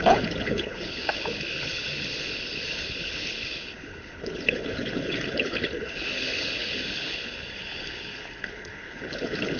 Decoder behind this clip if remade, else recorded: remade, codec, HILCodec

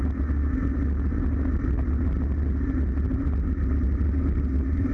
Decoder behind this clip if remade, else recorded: recorded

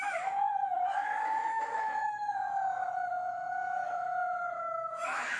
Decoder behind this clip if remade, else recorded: remade, autoencoder, DAC-VAE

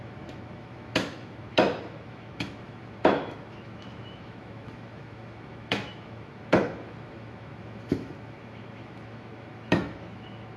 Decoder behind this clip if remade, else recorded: remade, autoencoder, DAC-VAE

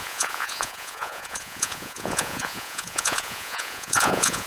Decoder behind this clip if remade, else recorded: remade, vocoder, Vocos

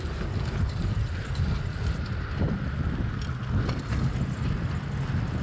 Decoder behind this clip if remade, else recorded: recorded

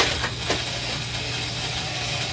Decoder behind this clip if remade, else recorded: recorded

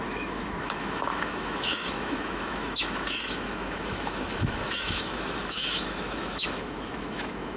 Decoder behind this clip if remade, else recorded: remade, autoencoder, DAC-VAE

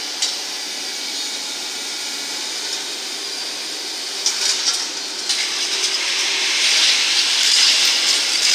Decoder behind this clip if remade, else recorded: recorded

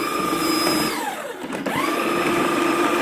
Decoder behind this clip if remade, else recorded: recorded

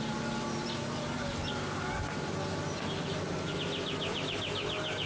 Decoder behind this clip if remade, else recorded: recorded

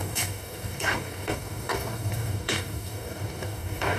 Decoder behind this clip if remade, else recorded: remade, codec, DAC